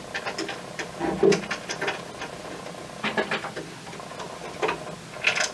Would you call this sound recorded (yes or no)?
yes